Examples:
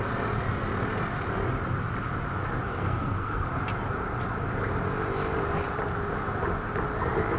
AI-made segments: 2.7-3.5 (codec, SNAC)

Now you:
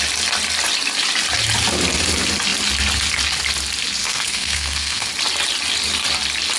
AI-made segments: 4.0-5.1 (codec, SNAC)

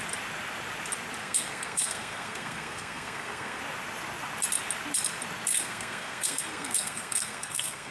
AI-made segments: 1.2-3.6 (codec, SNAC); 5.5-7.9

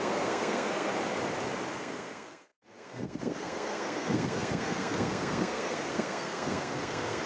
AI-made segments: 0.0-0.9 (codec, SNAC); 1.7-7.3

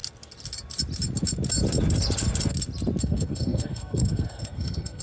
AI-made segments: 3.0-5.0 (codec, SNAC)

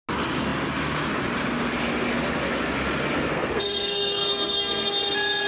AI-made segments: 3.3-4.9 (codec, SNAC)

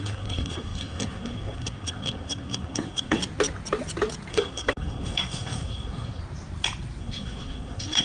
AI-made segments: 0.0-3.2 (codec, SNAC); 4.3-6.2; 7.0-8.0

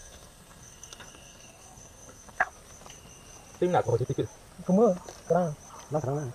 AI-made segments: 0.0-2.5 (codec, SNAC)